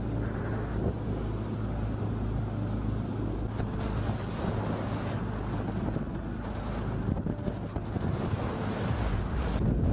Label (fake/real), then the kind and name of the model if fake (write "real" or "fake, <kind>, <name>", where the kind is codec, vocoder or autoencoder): real